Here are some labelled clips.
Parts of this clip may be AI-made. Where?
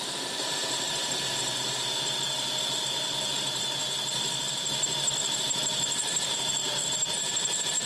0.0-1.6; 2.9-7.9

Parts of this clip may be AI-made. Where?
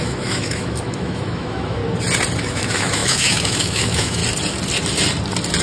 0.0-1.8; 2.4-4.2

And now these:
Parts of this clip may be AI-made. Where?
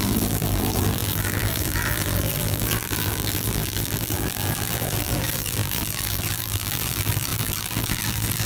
0.0-8.5